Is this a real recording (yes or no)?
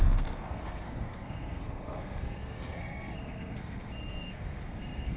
no